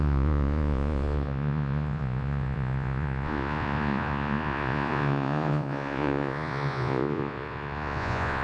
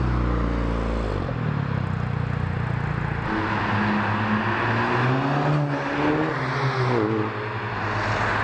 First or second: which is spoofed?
first